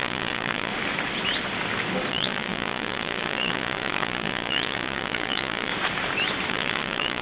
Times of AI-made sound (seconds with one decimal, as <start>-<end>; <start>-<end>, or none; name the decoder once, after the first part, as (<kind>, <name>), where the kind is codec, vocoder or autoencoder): 0.0-0.7 (vocoder, Vocos); 2.1-5.7; 6.5-7.2